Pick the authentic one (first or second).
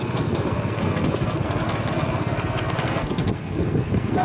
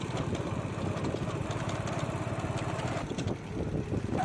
second